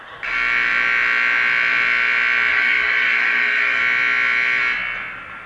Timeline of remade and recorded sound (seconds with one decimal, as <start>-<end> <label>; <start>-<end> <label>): 0.0-2.5 recorded; 2.5-3.8 remade; 3.8-5.5 recorded